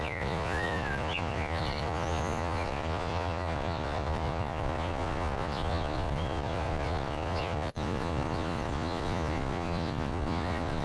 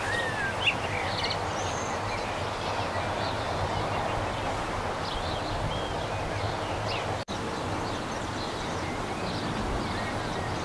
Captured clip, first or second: second